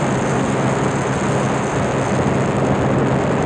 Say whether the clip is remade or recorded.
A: recorded